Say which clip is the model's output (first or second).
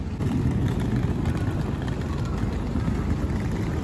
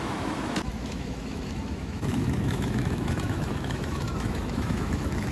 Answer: second